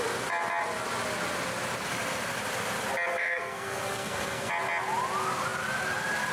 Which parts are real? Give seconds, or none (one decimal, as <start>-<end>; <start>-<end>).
0.0-3.1; 4.5-6.3